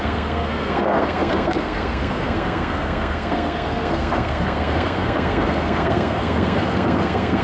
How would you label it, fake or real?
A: fake